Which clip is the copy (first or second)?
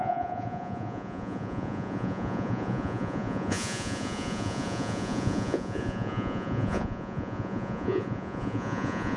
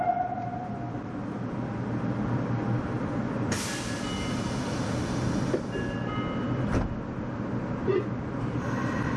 first